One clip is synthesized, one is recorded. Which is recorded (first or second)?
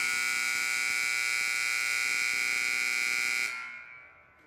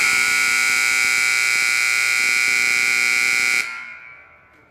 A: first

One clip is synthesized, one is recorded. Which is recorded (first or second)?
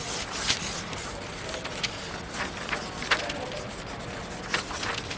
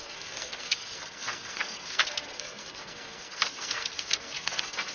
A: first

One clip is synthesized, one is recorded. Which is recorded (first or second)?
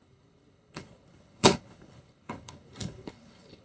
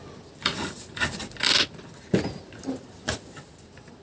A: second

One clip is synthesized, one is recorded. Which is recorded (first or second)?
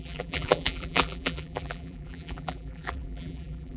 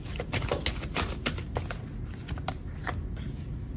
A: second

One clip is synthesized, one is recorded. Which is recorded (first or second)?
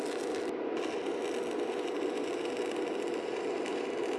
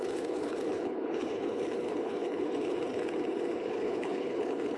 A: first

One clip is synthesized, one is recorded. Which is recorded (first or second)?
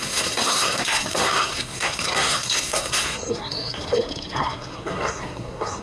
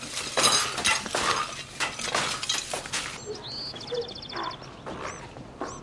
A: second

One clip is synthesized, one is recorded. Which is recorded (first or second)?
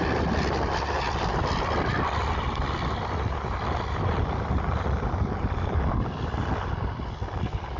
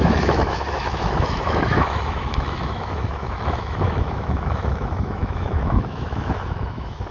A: first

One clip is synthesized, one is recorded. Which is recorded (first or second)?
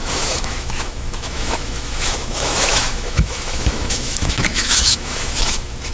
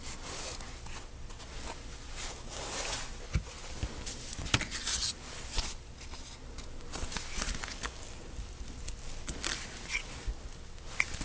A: second